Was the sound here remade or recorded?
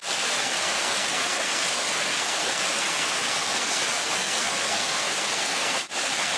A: remade